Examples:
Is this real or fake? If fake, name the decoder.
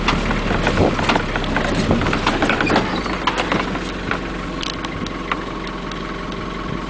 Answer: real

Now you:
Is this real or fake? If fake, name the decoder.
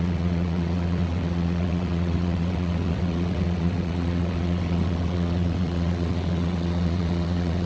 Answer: fake, vocoder, WaveNeXt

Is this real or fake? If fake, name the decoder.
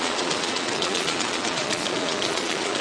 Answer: fake, vocoder, Vocos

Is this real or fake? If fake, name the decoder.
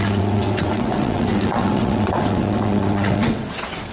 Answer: fake, vocoder, WaveNeXt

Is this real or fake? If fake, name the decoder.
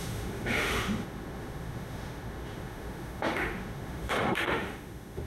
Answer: fake, autoencoder, DAC-VAE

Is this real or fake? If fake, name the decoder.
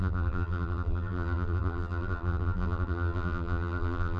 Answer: fake, vocoder, BigVGAN v2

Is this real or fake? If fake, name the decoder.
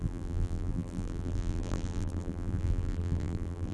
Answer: fake, vocoder, BigVGAN v2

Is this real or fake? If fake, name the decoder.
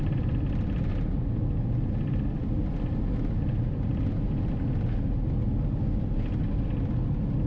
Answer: real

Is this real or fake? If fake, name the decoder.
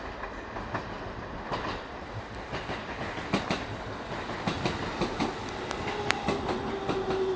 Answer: real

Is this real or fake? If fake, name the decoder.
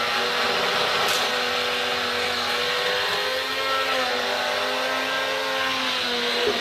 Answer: real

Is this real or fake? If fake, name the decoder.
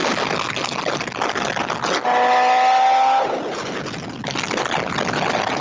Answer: real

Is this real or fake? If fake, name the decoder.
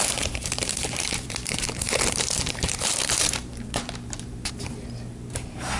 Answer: fake, vocoder, BigVGAN v2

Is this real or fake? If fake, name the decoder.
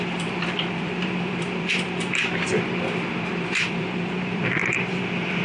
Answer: fake, vocoder, BigVGAN v2